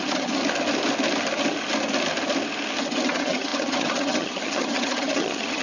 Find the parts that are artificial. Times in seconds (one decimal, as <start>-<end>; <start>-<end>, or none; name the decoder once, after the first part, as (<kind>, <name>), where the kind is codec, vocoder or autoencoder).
0.0-0.4 (vocoder, HiFi-GAN); 2.8-5.6